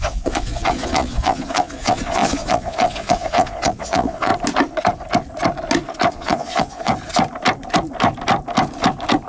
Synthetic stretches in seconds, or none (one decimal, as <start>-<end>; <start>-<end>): 0.0-4.3; 6.1-6.9